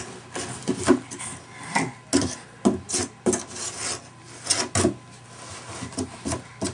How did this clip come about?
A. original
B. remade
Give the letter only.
A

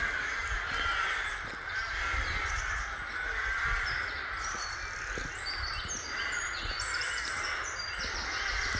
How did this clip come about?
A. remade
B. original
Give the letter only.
B